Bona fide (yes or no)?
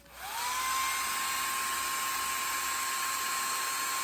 yes